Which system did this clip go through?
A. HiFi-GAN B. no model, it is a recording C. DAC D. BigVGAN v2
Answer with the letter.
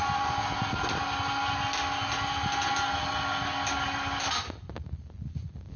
B